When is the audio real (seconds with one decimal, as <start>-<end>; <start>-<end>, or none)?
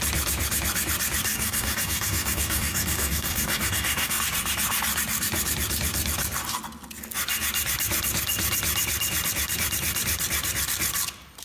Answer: 0.0-1.3; 4.2-11.4